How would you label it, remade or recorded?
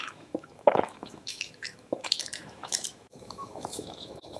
remade